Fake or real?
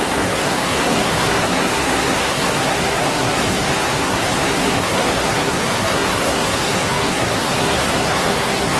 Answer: fake